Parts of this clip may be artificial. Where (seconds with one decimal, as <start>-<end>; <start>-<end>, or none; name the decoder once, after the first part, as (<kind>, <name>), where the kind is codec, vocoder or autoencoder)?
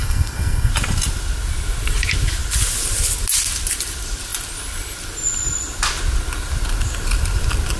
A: 0.0-0.7 (codec, SNAC)